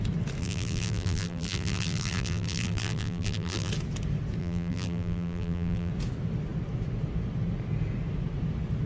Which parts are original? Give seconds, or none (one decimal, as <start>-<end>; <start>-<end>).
0.0-0.4; 3.7-4.4; 5.9-8.9